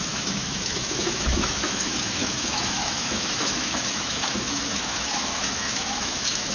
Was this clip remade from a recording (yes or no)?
yes